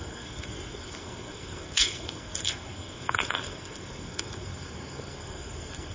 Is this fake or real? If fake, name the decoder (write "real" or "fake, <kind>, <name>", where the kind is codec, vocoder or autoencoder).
fake, codec, SNAC